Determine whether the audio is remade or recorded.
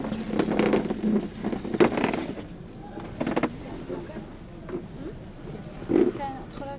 recorded